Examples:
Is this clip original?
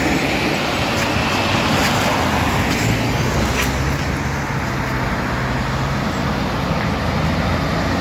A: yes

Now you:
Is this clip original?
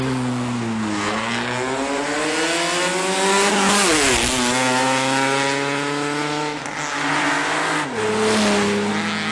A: yes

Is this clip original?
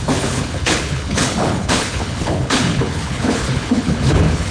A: no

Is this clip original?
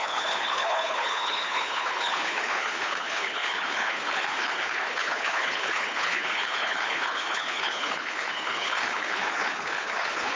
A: no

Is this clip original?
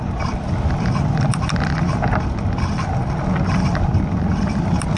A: yes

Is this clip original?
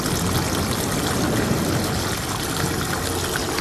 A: yes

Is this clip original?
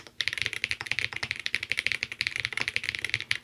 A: yes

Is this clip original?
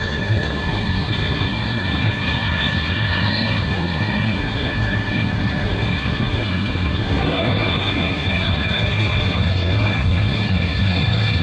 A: no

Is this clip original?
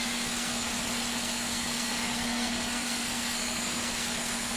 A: no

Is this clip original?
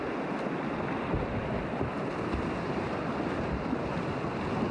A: yes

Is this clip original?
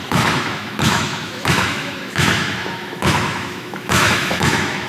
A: no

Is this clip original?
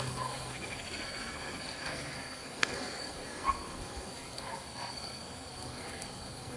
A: no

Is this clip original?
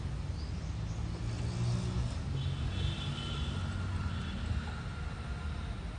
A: yes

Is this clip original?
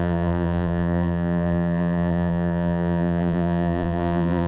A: no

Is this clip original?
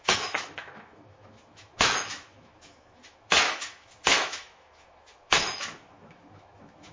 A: no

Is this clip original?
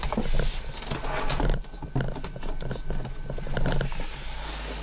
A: yes